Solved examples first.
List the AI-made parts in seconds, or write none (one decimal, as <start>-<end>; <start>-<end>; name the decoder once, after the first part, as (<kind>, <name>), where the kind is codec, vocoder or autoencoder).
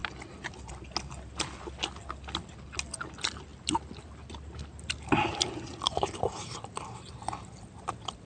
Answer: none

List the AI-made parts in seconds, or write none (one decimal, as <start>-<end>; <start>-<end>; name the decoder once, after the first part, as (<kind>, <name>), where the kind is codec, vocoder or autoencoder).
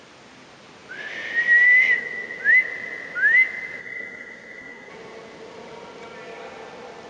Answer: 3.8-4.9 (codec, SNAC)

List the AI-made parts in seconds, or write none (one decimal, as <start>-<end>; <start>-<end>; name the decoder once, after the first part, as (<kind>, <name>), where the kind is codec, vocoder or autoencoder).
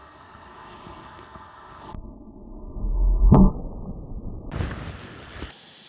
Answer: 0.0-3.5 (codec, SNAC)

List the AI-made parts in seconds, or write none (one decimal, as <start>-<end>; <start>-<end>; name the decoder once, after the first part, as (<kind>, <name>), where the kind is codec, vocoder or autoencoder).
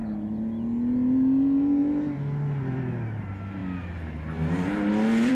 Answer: none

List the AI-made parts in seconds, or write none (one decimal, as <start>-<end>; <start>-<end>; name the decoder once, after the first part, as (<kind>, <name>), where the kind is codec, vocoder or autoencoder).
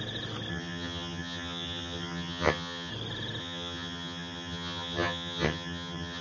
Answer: 0.5-2.9 (vocoder, HiFi-GAN); 3.4-6.2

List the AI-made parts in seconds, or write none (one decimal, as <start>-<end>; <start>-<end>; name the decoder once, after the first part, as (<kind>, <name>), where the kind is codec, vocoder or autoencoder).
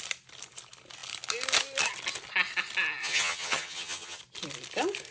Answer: 3.0-4.2 (vocoder, HiFi-GAN)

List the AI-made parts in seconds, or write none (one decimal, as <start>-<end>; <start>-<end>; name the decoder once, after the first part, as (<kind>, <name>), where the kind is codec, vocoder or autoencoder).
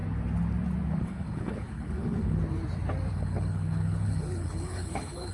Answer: 1.0-2.4 (codec, HILCodec); 3.1-5.3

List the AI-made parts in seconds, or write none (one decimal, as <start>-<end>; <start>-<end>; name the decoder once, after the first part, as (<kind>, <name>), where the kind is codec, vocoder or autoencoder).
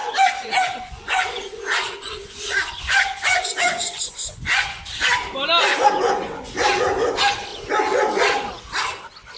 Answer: 0.0-4.8 (vocoder, Vocos); 5.7-6.5